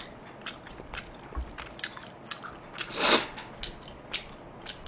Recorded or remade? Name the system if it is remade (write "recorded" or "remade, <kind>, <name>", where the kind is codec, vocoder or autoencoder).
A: recorded